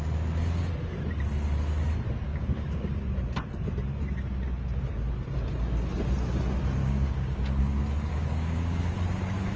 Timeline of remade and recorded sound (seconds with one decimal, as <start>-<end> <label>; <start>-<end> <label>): 0.0-2.3 recorded; 2.3-2.9 remade; 2.9-6.8 recorded; 6.8-7.6 remade; 7.6-8.1 recorded; 8.1-8.9 remade; 8.9-9.6 recorded